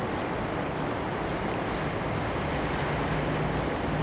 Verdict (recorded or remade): recorded